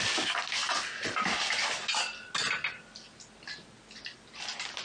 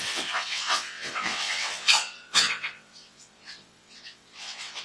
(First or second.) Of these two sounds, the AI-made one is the second